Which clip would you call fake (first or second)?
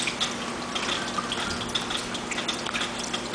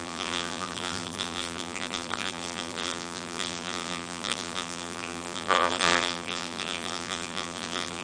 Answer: second